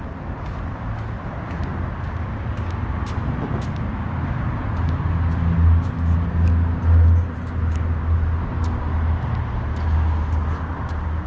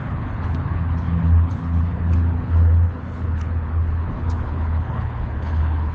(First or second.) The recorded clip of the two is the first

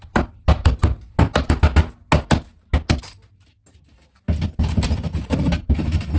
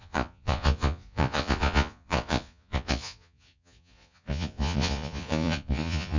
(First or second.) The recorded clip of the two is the first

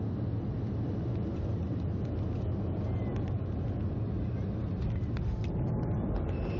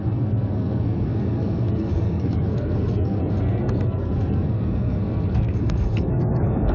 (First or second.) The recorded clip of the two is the first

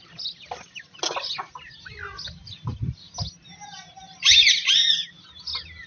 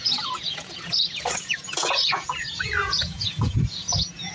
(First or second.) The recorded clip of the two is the first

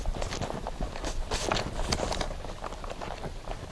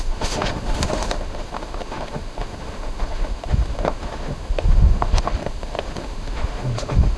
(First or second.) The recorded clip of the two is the first